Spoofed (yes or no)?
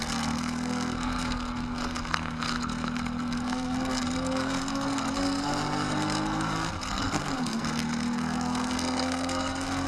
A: yes